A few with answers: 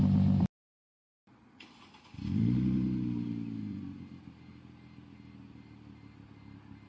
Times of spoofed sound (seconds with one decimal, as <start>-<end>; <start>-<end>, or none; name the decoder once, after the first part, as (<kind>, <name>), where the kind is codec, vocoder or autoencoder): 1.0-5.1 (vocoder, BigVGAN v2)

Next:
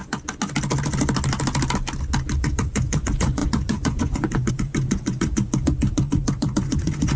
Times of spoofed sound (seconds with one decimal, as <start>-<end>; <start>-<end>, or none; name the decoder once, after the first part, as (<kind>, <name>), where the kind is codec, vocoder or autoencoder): 2.4-7.2 (vocoder, Vocos)

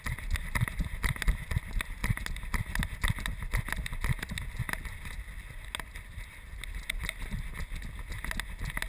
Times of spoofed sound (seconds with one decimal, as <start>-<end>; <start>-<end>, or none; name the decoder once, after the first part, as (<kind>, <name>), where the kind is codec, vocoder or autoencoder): none